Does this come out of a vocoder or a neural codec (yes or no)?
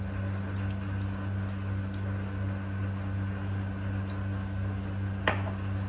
no